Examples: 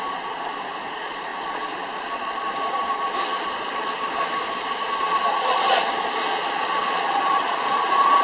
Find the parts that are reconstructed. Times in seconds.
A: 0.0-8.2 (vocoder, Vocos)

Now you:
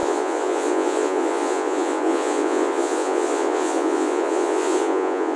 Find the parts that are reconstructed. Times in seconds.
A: 0.0-5.4 (vocoder, Vocos)

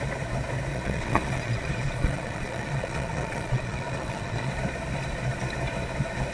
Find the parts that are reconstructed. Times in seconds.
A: 0.7-4.5 (vocoder, Vocos)

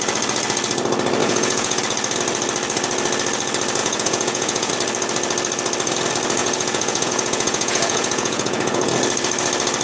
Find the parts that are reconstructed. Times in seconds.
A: 1.2-1.8 (vocoder, Vocos); 3.8-4.7; 6.4-8.9